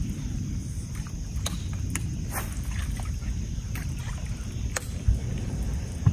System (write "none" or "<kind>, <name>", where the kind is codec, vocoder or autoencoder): none